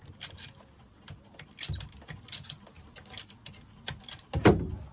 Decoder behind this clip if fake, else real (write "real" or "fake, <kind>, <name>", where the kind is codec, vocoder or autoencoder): real